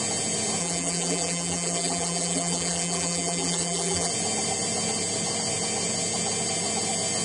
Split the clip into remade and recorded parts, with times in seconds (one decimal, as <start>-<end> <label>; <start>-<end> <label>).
0.0-0.6 recorded; 0.6-4.1 remade; 4.1-7.2 recorded